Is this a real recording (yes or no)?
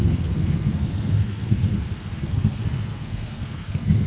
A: no